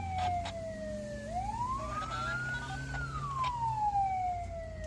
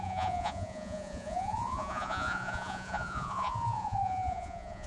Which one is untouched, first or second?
first